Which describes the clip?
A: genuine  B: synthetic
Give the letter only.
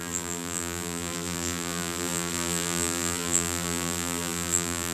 B